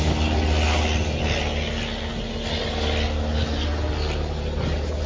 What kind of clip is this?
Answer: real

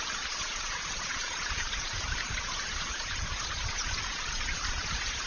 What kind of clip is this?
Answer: fake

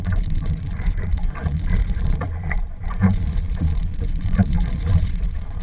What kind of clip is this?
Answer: fake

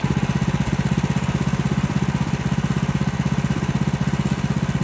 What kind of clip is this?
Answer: real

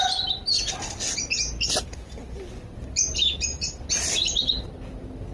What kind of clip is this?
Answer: real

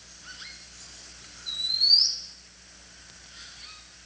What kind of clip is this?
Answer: real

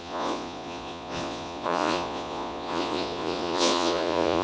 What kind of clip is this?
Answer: fake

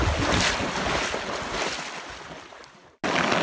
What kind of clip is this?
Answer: real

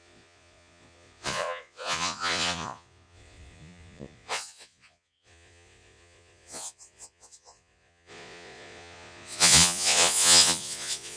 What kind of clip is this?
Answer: fake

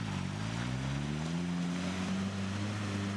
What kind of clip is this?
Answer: real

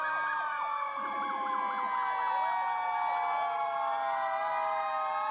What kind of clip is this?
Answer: real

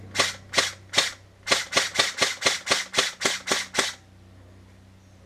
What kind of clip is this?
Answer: real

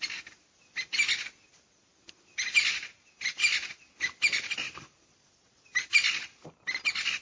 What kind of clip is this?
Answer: real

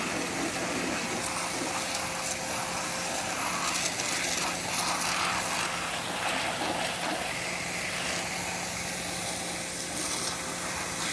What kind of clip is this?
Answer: real